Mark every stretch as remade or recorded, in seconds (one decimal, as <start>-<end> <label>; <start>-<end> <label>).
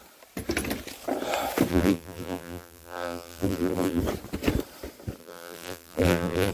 0.0-1.7 recorded; 1.7-4.0 remade; 4.0-5.2 recorded; 5.2-6.5 remade